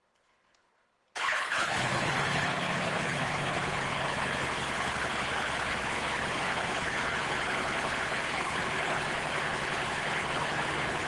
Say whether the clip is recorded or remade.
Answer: remade